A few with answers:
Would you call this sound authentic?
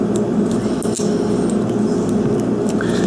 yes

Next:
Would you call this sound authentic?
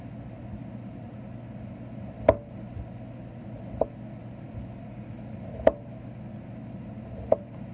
yes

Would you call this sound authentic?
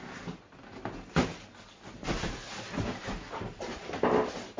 yes